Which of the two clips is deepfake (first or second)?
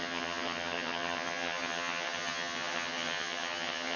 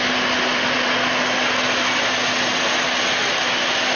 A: first